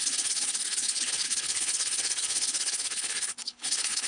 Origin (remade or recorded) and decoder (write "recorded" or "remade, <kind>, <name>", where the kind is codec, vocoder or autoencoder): remade, codec, HILCodec